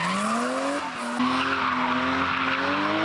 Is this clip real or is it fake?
real